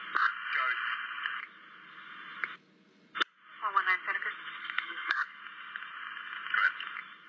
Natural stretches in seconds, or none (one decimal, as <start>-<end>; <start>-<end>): 0.0-4.6; 5.4-7.3